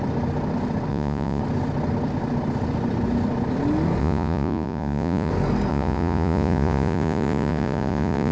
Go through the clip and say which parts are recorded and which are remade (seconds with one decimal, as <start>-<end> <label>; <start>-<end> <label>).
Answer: 0.0-0.9 recorded; 0.9-1.4 remade; 1.4-4.0 recorded; 4.0-5.3 remade; 5.3-5.7 recorded; 5.7-8.3 remade